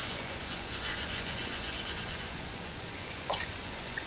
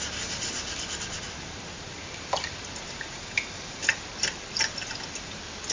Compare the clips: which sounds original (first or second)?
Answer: second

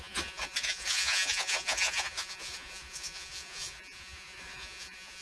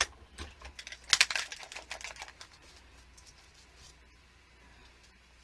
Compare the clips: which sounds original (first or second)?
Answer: second